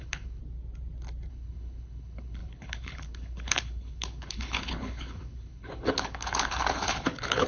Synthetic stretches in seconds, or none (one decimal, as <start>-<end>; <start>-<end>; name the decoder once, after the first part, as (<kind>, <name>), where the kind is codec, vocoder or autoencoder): 0.0-0.4 (codec, HILCodec); 1.3-7.5

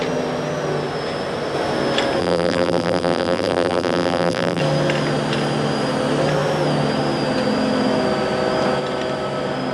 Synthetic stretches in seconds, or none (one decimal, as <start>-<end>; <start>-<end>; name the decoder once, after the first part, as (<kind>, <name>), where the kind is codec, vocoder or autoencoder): 2.2-4.6 (vocoder, BigVGAN v2)

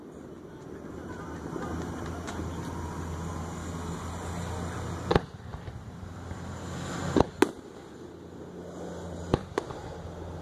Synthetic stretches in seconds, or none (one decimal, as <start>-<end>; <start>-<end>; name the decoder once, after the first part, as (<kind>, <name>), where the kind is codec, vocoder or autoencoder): 1.0-3.3 (vocoder, BigVGAN v2); 5.5-6.6

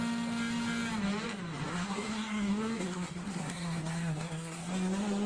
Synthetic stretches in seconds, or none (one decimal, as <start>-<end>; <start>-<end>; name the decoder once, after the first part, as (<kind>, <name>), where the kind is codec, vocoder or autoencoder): 1.7-4.7 (codec, SNAC)

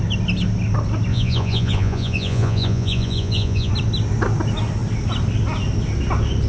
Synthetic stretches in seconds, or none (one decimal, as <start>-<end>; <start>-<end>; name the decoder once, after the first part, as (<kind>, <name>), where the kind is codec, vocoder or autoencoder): 1.1-3.7 (vocoder, Vocos)

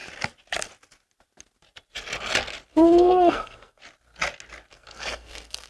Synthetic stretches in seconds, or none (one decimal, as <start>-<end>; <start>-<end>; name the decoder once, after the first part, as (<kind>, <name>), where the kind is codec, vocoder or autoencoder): 2.7-3.8 (codec, SNAC); 4.7-5.7

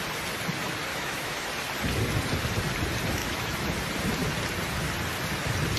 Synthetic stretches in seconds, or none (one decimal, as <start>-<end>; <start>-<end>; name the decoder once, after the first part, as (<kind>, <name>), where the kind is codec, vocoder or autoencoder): 0.9-1.5 (autoencoder, DAC-VAE); 3.2-3.8